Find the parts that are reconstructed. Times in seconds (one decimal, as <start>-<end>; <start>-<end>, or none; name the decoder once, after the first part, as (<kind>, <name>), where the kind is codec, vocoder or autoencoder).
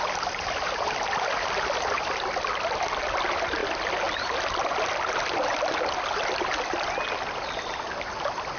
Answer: none